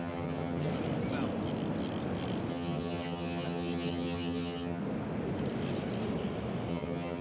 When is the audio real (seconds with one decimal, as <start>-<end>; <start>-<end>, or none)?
0.7-2.5; 4.8-6.7